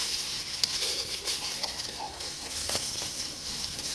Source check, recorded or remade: remade